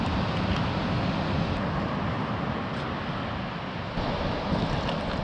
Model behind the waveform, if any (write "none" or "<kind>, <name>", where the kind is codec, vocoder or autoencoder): none